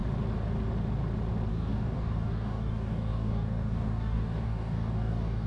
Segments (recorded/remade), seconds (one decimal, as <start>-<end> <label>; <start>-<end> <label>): 0.0-1.5 recorded; 1.5-5.5 remade